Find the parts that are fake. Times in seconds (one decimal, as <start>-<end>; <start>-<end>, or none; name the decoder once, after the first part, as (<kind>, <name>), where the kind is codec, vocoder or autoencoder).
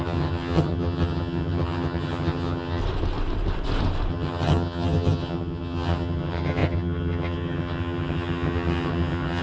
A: 0.0-2.8 (vocoder, HiFi-GAN); 4.1-9.4